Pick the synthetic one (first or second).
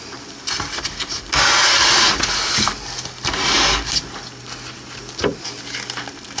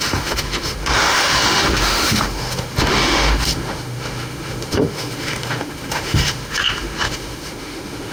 second